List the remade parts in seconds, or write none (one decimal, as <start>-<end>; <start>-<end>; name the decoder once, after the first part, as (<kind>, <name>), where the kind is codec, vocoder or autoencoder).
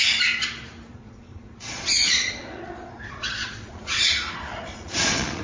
0.9-4.1 (vocoder, Vocos); 4.5-5.4